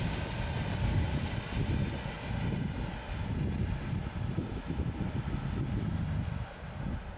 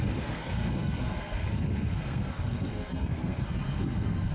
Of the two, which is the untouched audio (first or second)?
first